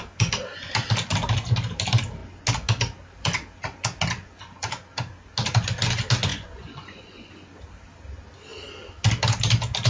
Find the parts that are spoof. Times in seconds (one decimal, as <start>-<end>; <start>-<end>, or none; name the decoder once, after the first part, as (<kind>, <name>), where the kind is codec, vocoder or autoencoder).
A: 6.3-7.3 (vocoder, Vocos)